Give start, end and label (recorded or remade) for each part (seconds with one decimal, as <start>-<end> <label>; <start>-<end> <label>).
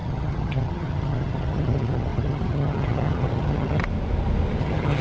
0.0-3.8 remade; 3.8-4.6 recorded; 4.6-5.0 remade